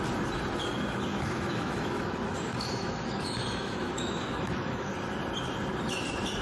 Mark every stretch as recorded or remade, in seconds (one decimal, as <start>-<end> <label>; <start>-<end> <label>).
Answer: 0.0-1.1 recorded; 1.1-4.9 remade; 4.9-6.4 recorded

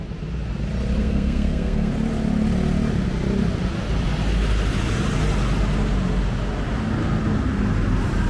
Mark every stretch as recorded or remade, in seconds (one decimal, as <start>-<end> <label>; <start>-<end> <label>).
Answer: 0.0-1.0 recorded; 1.0-1.9 remade; 1.9-8.3 recorded

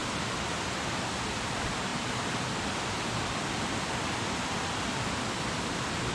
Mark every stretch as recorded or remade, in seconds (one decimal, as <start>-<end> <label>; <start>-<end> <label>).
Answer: 0.0-6.1 recorded

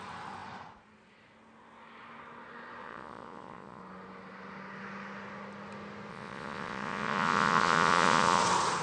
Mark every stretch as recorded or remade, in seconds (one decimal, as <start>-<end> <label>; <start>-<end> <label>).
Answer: 0.0-2.8 recorded; 2.8-3.8 remade; 3.8-6.1 recorded; 6.1-8.4 remade; 8.4-8.8 recorded